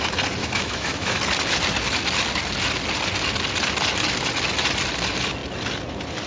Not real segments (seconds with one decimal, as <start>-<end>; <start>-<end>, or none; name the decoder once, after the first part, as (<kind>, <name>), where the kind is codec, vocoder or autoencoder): 0.4-1.2 (autoencoder, DAC-VAE)